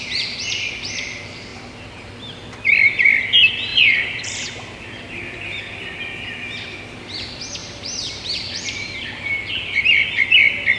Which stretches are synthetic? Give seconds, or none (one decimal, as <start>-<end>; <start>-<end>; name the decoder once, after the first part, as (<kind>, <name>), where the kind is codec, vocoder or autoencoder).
1.5-2.1 (vocoder, BigVGAN v2); 3.7-5.6; 7.6-9.3

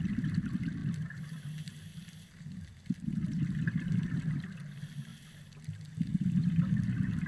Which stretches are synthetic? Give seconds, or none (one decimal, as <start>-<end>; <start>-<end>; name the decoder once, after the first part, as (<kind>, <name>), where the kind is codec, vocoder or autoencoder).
0.0-5.1 (vocoder, BigVGAN v2); 5.8-7.3

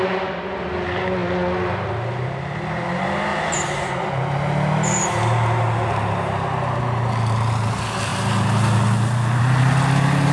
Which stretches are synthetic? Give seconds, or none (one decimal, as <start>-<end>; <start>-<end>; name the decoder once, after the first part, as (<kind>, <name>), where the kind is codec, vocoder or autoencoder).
3.3-3.9 (vocoder, BigVGAN v2)